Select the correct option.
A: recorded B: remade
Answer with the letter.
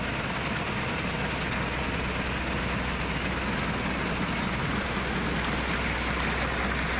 A